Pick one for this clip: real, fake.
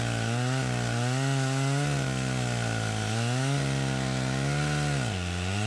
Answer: real